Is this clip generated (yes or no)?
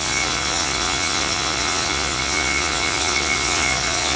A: yes